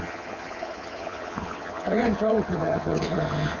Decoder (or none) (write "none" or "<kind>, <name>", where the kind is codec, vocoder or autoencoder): vocoder, HiFi-GAN